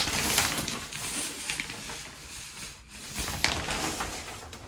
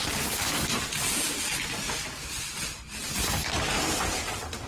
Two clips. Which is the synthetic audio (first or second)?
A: second